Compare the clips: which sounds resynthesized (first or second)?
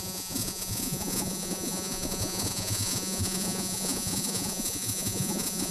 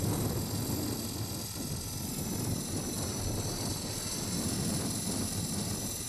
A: first